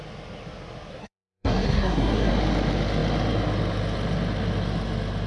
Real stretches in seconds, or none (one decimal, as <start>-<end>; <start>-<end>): 0.0-0.9; 2.3-5.3